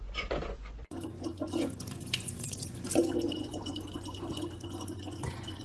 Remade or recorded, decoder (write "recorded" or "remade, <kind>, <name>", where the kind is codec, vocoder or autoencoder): remade, vocoder, Vocos